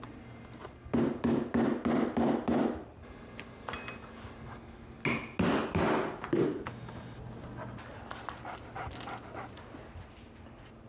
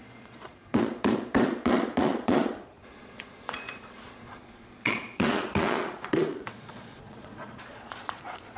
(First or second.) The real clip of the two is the first